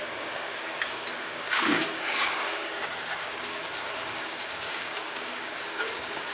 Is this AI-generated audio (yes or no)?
yes